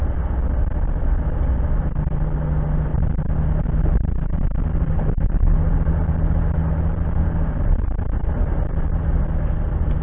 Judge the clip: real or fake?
real